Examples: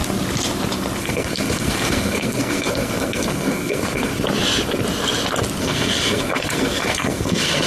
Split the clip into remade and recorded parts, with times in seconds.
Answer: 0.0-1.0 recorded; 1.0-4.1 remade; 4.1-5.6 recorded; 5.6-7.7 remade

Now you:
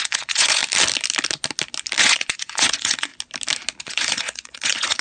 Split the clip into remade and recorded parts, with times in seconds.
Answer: 0.0-0.6 remade; 0.6-2.0 recorded; 2.0-3.1 remade; 3.1-3.8 recorded; 3.8-5.0 remade

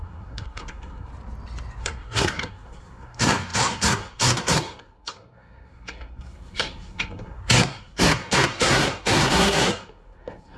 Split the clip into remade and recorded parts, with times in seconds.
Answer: 0.0-1.1 remade; 1.1-1.8 recorded; 1.8-10.6 remade

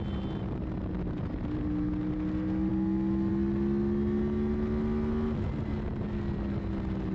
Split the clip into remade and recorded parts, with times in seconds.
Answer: 0.0-7.1 recorded

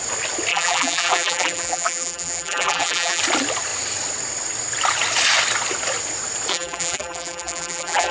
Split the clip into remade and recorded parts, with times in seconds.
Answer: 0.0-0.5 recorded; 0.5-3.2 remade; 3.2-6.5 recorded; 6.5-8.1 remade